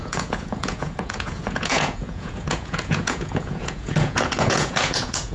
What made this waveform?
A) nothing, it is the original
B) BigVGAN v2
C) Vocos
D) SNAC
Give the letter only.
C